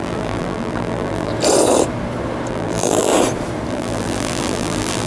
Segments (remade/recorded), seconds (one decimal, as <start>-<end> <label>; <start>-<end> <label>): 0.0-1.3 remade; 1.3-2.5 recorded; 2.5-3.1 remade; 3.1-3.7 recorded; 3.7-5.1 remade